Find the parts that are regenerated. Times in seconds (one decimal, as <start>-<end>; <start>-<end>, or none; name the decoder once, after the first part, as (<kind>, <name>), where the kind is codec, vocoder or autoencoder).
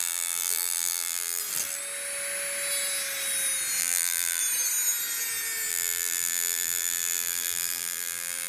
0.0-1.4 (vocoder, BigVGAN v2); 3.8-4.4; 5.7-8.5